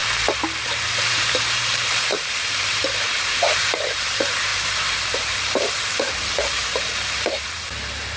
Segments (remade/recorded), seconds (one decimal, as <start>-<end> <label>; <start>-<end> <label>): 0.0-1.1 recorded; 1.1-8.2 remade